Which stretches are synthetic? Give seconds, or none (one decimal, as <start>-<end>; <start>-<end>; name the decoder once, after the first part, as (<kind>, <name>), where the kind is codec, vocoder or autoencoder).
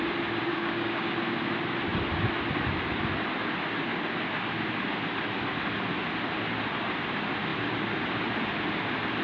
0.5-1.1 (codec, DAC)